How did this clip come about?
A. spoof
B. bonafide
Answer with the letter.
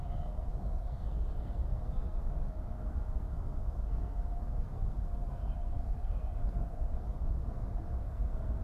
A